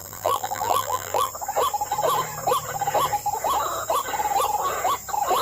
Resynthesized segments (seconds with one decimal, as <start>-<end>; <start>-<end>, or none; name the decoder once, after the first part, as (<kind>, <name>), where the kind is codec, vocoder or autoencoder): 0.0-1.3 (vocoder, BigVGAN v2)